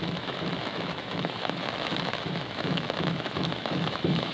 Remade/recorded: remade